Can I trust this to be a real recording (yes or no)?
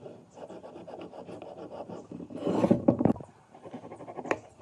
no